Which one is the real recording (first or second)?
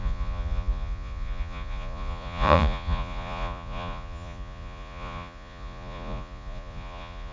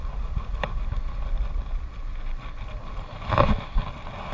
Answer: second